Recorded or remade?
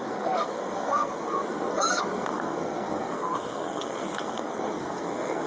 remade